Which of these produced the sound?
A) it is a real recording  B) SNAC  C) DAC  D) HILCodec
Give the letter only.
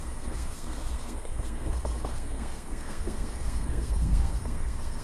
B